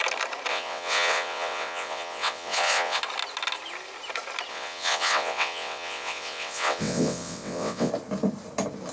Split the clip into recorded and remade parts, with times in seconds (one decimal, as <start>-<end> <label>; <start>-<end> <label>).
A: 0.0-0.5 recorded; 0.5-3.0 remade; 3.0-4.5 recorded; 4.5-7.9 remade; 7.9-8.9 recorded